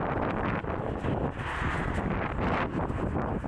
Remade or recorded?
recorded